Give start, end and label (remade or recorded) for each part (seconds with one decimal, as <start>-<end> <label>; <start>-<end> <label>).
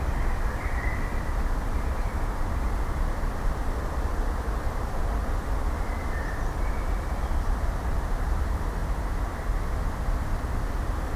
0.0-8.8 remade; 8.8-9.9 recorded; 9.9-11.2 remade